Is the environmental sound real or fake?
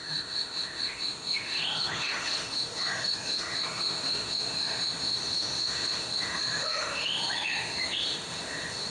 fake